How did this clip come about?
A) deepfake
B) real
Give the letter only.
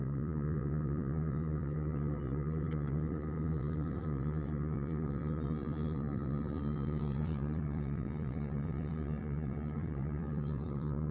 A